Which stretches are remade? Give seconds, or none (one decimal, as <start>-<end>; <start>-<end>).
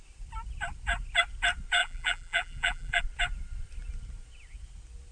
1.8-3.0